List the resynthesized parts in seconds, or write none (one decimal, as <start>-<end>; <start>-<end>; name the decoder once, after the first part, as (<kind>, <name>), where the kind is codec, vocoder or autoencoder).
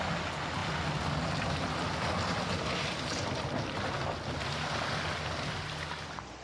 none